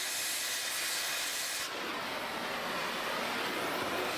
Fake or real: real